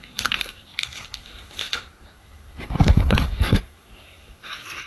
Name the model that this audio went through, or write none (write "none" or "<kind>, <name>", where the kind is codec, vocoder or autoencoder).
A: codec, SNAC